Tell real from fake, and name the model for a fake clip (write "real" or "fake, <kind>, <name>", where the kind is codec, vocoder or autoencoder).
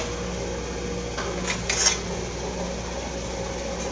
real